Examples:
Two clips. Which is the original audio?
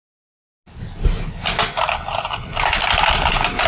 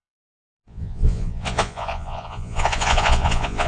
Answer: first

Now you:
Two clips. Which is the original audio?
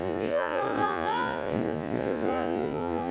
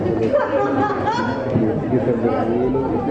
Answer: second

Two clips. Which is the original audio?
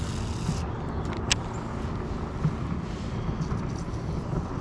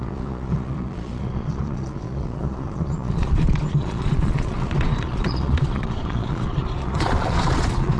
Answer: first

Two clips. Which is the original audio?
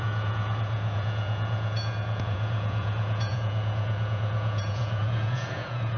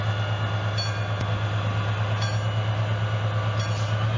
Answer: second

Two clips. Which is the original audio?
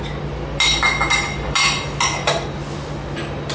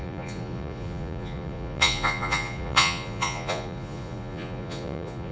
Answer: first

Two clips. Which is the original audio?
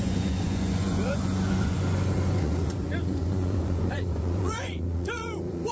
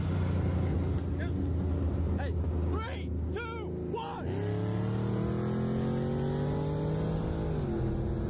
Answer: second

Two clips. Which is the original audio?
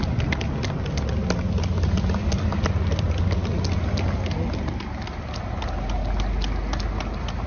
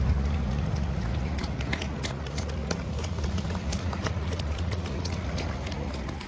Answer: first